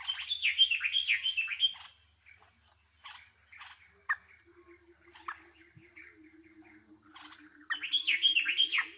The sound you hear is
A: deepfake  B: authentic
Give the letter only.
B